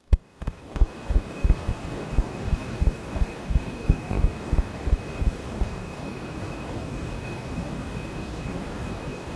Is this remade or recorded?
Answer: remade